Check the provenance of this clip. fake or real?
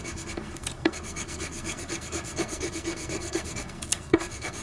fake